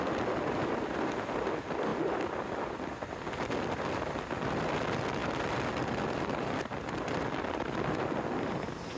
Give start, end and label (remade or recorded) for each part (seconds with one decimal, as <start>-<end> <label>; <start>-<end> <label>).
0.0-9.0 recorded